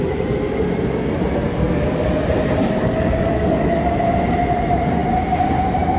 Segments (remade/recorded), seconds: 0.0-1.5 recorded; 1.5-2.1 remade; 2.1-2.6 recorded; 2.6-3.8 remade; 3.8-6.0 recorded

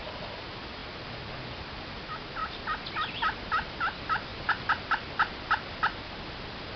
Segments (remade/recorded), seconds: 0.0-6.8 recorded

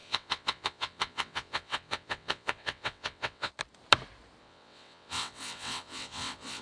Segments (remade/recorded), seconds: 0.0-3.5 remade; 3.5-4.4 recorded; 4.4-6.6 remade

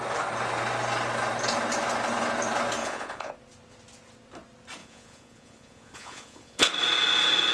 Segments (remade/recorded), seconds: 0.0-2.8 recorded; 2.8-3.3 remade; 3.3-4.8 recorded; 4.8-6.7 remade; 6.7-7.5 recorded

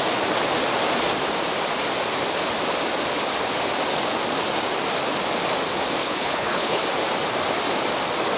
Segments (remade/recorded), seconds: 0.0-6.0 recorded; 6.0-6.8 remade; 6.8-8.4 recorded

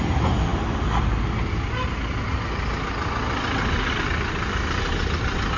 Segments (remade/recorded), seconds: 0.0-5.6 recorded

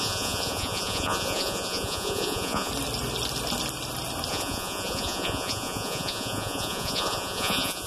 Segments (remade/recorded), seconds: 0.0-2.7 remade; 2.7-4.3 recorded; 4.3-7.9 remade